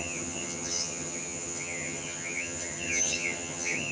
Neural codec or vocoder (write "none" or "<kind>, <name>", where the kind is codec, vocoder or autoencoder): vocoder, HiFi-GAN